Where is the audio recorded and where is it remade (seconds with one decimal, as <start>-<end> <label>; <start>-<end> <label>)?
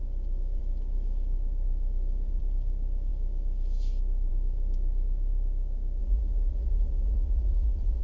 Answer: 0.0-6.0 recorded; 6.0-8.0 remade